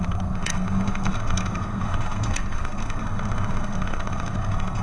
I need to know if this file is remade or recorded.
remade